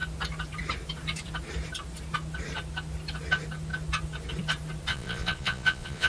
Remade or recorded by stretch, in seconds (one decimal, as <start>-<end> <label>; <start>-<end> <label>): 0.0-4.9 recorded; 4.9-6.1 remade